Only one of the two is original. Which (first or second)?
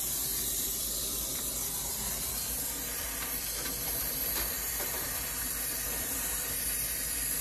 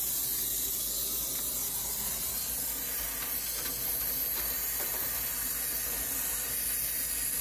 second